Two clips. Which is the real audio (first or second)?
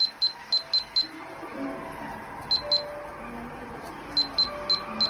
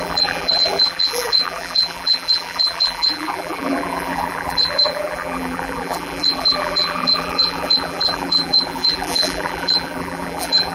first